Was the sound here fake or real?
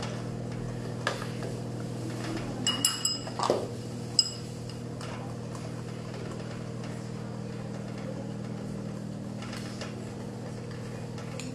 real